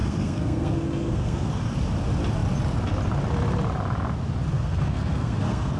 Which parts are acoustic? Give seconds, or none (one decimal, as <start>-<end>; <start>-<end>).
1.5-4.5